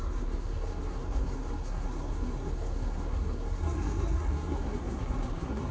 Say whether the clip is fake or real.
fake